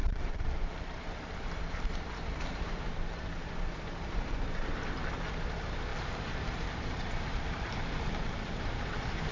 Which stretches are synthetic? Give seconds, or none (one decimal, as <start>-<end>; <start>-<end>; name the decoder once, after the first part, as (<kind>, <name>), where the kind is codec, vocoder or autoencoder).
0.0-4.9 (vocoder, BigVGAN v2); 5.9-9.3

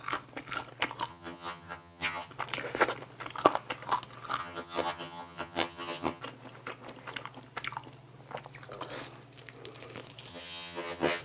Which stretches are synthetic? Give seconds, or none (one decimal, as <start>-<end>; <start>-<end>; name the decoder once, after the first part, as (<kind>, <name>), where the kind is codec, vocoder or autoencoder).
1.1-2.3 (vocoder, HiFi-GAN); 4.4-6.2; 10.3-11.2